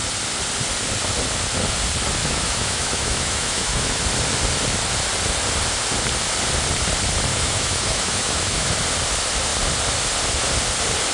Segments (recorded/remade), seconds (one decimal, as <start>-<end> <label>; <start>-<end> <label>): 0.0-2.2 recorded; 2.2-4.0 remade; 4.0-7.3 recorded; 7.3-8.7 remade; 8.7-11.1 recorded